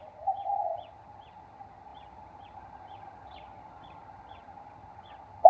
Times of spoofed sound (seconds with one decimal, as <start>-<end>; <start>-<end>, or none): 0.0-5.5